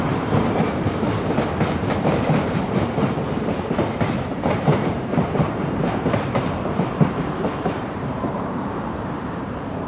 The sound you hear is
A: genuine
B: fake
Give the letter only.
B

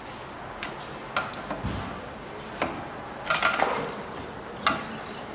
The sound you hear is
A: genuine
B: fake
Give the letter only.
A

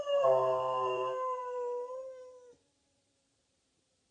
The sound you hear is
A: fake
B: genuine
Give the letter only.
A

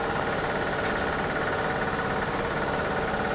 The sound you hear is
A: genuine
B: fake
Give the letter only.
A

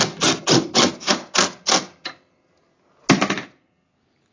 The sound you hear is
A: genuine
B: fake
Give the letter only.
A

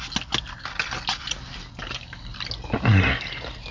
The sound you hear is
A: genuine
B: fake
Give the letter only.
A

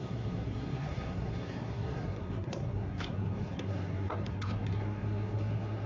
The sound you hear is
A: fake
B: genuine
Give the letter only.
A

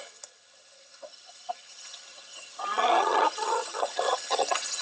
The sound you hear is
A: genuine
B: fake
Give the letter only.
B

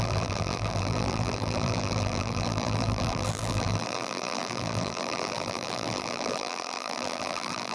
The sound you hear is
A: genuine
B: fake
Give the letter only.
B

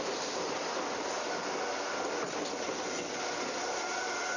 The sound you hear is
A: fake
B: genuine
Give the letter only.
B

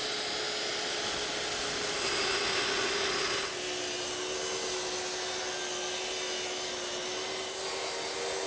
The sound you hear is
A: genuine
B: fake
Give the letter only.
A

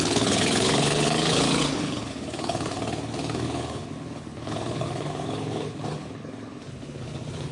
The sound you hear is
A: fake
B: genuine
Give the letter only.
A